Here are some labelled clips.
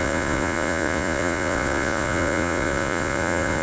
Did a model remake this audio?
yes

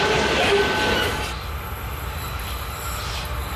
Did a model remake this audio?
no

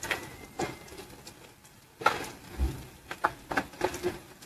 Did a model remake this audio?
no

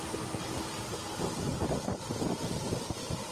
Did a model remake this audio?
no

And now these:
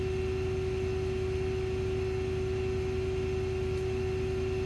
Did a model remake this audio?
no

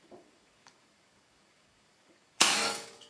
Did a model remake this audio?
yes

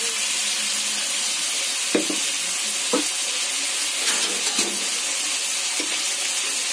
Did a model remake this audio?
no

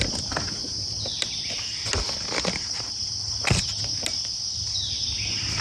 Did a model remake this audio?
no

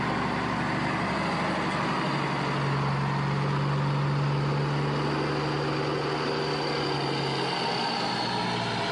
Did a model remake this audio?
no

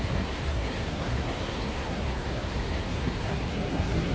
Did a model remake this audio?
yes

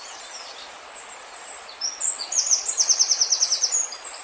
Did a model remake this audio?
no